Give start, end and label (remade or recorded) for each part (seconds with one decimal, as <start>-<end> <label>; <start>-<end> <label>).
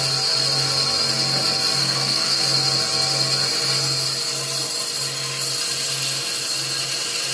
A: 0.0-1.8 recorded; 1.8-2.4 remade; 2.4-7.3 recorded